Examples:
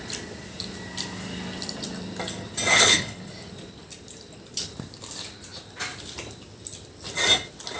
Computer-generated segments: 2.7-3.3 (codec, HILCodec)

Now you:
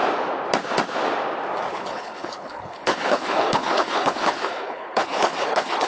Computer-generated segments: 1.7-5.9 (codec, HILCodec)